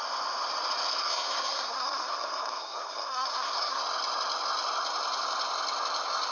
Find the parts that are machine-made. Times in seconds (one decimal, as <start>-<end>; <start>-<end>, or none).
1.0-3.8